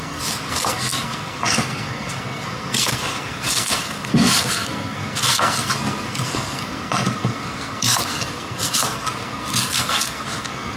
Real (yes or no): no